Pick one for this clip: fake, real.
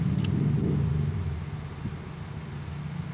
real